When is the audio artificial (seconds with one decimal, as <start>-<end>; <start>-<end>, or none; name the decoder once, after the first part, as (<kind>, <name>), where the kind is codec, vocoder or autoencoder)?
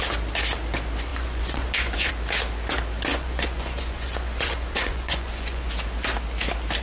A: 1.1-2.1 (vocoder, Vocos); 3.1-5.7